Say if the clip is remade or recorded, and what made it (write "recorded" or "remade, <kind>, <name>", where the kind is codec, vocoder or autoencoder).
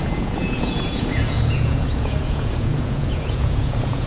remade, vocoder, Vocos